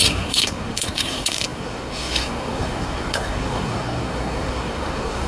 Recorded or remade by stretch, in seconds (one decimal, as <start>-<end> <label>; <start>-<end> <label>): 0.0-5.3 remade